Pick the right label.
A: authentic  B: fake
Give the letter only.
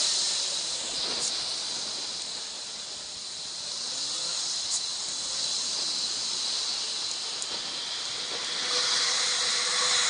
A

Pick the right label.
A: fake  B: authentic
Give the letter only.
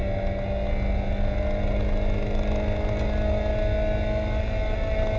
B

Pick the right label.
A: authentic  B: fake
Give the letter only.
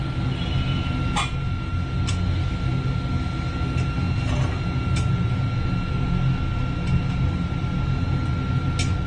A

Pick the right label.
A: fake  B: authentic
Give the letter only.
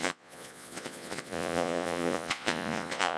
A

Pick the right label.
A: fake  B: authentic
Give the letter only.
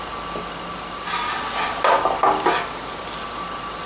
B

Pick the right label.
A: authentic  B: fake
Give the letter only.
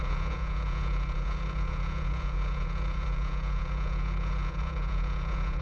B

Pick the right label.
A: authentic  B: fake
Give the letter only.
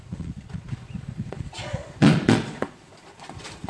B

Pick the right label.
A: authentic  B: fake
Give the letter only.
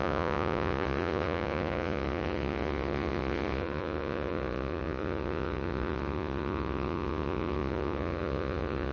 B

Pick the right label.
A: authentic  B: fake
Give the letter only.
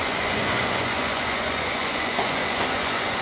B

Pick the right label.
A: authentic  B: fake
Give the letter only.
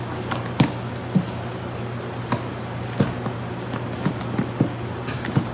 A